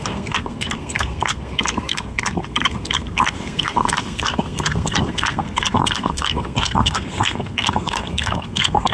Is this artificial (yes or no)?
yes